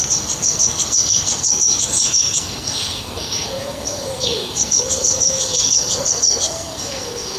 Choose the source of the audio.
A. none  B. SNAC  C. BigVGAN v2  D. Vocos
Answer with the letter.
B